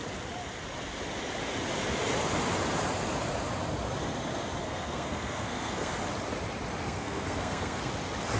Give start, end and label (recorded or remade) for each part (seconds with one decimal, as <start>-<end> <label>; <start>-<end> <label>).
0.0-4.6 recorded; 4.6-5.9 remade; 5.9-6.8 recorded; 6.8-7.9 remade; 7.9-8.4 recorded